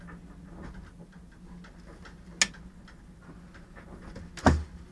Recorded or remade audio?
recorded